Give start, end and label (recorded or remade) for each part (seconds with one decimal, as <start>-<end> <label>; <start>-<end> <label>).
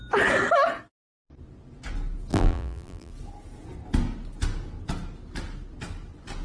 0.0-2.3 recorded; 2.3-3.1 remade; 3.1-6.4 recorded